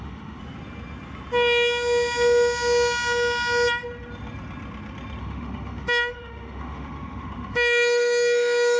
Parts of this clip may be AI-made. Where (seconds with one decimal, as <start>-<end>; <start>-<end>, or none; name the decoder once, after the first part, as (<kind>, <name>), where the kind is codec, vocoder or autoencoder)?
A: 0.0-0.4 (autoencoder, DAC-VAE); 5.2-8.8